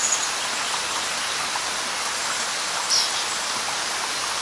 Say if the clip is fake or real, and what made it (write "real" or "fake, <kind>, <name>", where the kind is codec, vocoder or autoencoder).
real